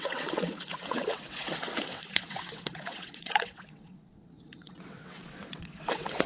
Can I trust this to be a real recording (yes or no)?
no